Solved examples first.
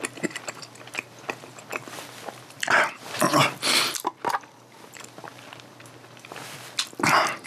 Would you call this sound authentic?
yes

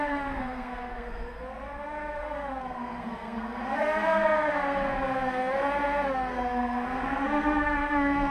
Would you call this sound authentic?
no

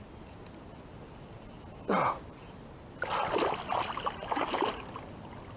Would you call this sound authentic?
yes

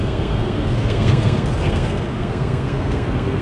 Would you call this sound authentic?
no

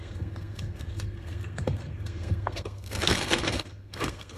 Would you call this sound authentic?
no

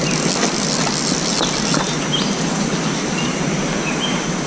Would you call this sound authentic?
yes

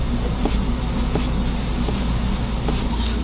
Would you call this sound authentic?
yes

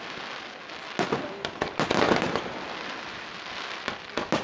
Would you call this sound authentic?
yes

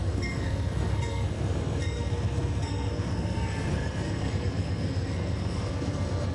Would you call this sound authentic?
no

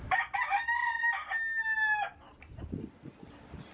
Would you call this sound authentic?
yes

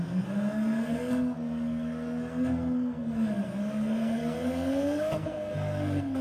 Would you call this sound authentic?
no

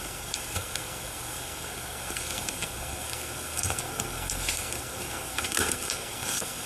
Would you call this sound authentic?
no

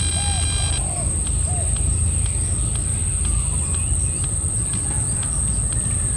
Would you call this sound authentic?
yes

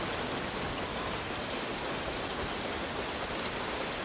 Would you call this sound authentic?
yes